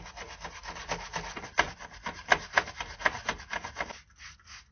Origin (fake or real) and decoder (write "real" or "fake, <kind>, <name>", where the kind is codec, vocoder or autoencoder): real